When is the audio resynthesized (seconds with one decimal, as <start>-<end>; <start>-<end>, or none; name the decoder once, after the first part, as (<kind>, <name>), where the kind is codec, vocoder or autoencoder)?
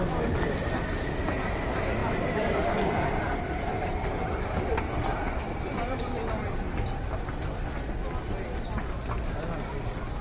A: 2.0-7.3 (vocoder, BigVGAN v2)